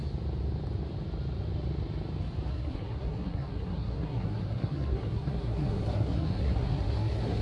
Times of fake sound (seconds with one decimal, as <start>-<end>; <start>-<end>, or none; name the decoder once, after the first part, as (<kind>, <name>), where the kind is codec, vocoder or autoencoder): 2.5-7.4 (codec, SNAC)